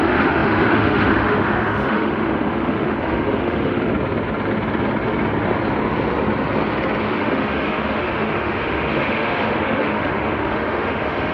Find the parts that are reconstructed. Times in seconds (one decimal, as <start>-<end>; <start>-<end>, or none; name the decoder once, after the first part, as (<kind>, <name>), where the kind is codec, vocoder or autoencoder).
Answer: 0.0-3.9 (autoencoder, DAC-VAE); 7.0-11.3